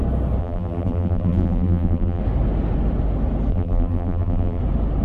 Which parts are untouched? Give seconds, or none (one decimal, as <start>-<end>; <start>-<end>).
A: 0.0-0.4; 2.2-3.5; 4.6-5.0

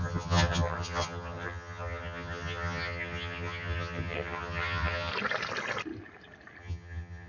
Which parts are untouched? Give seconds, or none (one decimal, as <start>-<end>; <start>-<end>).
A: 5.1-6.6